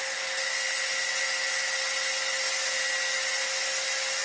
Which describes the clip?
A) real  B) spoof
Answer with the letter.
A